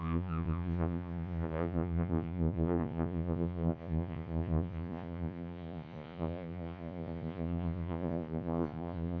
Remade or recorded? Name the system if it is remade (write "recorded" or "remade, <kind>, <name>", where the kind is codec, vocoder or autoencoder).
remade, vocoder, Vocos